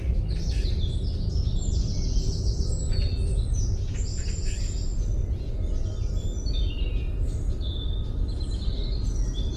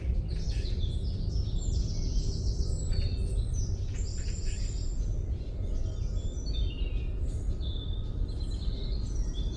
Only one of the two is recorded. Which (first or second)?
first